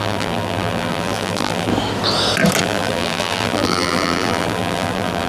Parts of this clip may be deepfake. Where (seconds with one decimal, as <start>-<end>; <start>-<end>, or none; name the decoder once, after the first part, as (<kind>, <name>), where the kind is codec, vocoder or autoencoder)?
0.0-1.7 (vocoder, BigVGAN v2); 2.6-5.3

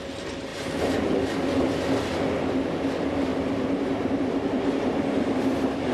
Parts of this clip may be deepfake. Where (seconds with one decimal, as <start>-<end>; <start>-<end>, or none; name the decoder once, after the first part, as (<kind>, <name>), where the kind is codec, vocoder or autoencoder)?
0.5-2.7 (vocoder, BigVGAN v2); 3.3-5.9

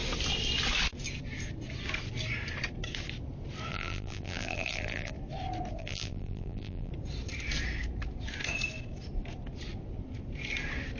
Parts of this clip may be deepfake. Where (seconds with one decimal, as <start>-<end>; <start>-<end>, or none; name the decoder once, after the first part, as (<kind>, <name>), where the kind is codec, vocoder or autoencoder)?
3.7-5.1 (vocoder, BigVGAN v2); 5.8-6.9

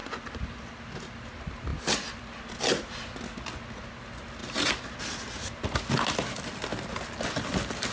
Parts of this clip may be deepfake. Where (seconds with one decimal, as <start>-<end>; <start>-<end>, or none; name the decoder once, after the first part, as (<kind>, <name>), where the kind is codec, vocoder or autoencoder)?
none